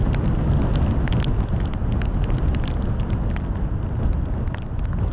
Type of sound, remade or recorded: recorded